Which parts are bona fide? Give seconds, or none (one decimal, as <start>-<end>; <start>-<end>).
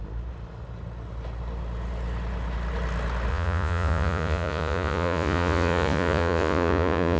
0.0-3.3